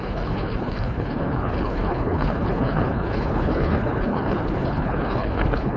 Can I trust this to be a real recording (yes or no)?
no